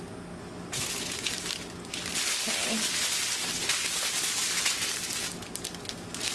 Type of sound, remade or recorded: recorded